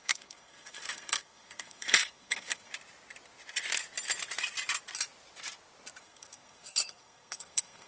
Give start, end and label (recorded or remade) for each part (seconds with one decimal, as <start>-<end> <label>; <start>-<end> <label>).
0.0-2.7 remade; 2.7-6.0 recorded; 6.0-7.9 remade